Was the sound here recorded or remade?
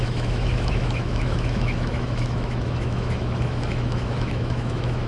remade